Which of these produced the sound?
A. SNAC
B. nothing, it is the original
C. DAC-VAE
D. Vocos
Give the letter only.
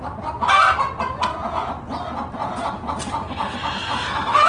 B